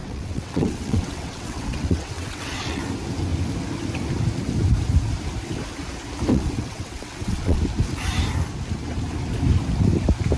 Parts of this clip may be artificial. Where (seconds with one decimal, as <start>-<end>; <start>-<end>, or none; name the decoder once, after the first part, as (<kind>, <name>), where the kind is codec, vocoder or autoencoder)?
0.0-2.8 (vocoder, WaveNeXt); 6.3-7.6